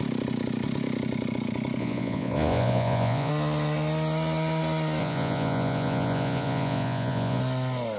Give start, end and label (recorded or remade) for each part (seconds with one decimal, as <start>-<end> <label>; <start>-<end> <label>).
0.0-1.8 recorded; 1.8-3.3 remade; 3.3-5.0 recorded; 5.0-7.4 remade; 7.4-8.0 recorded

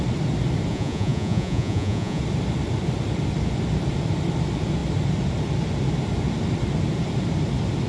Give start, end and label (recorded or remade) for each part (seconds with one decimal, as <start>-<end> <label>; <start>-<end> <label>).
0.0-0.7 recorded; 0.7-2.2 remade; 2.2-7.9 recorded

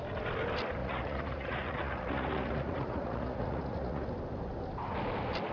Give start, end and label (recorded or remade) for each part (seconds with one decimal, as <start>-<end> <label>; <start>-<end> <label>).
0.0-0.8 recorded; 0.8-4.1 remade; 4.1-5.5 recorded

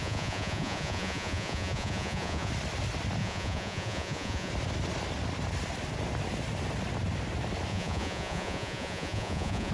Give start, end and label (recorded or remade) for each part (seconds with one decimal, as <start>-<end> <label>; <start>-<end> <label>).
0.0-2.5 remade; 2.5-3.2 recorded; 3.2-4.5 remade; 4.5-7.7 recorded; 7.7-9.7 remade

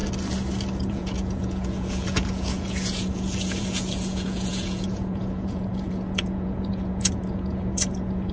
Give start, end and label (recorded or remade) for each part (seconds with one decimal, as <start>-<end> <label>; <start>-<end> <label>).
0.0-0.8 recorded; 0.8-8.3 remade